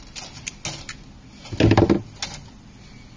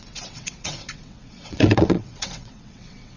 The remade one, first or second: second